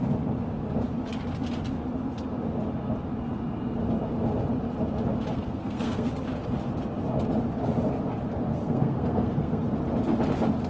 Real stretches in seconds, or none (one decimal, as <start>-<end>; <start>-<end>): 0.0-5.3; 6.1-8.5; 9.6-10.7